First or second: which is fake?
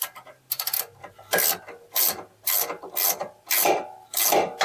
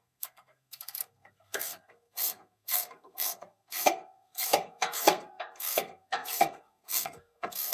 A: second